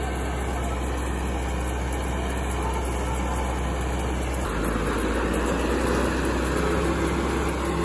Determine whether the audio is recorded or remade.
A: recorded